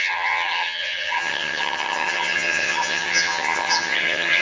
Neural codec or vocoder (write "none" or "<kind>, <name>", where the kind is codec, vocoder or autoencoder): vocoder, HiFi-GAN